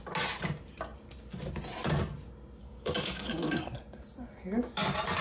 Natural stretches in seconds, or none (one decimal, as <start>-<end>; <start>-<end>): 0.0-2.6; 3.7-5.2